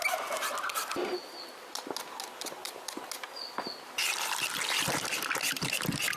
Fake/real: real